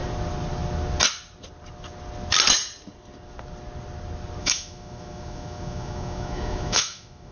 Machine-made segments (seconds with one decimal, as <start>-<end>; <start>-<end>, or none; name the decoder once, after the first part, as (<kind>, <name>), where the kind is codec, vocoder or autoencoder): 4.4-7.3 (autoencoder, DAC-VAE)